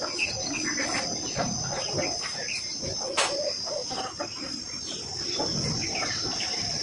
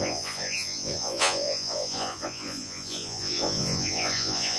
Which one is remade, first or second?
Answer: second